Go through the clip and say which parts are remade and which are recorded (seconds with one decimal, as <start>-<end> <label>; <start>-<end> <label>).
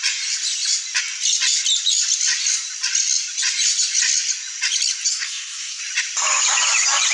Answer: 0.0-5.1 recorded; 5.1-5.8 remade; 5.8-7.1 recorded